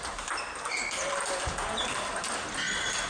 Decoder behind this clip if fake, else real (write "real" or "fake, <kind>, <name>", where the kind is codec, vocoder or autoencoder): real